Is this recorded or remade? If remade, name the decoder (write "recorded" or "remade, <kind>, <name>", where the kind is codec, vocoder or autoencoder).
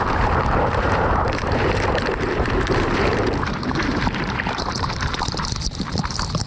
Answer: remade, vocoder, BigVGAN v2